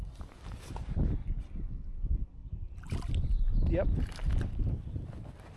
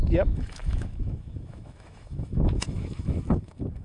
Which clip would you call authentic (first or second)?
first